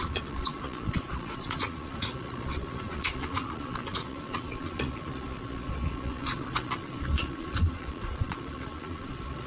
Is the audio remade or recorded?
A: remade